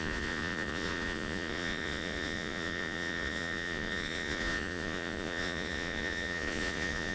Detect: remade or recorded remade